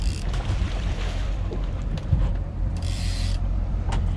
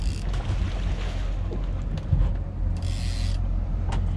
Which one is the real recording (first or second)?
second